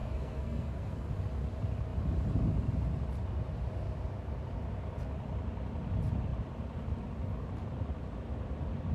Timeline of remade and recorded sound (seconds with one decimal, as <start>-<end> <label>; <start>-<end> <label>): 0.0-1.1 remade; 1.1-8.9 recorded

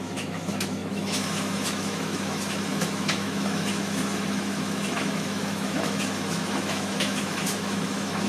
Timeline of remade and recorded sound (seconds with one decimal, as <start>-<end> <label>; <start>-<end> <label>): 0.0-8.3 remade

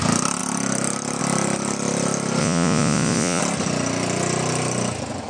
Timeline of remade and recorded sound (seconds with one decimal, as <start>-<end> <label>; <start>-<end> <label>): 0.0-2.4 recorded; 2.4-3.4 remade; 3.4-5.3 recorded